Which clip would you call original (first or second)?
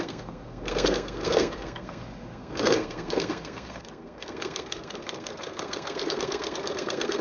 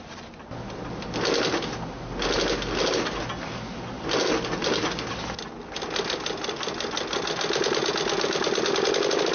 second